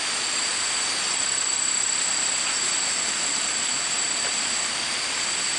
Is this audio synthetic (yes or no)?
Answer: no